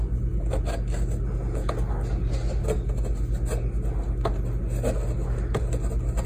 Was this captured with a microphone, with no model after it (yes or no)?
yes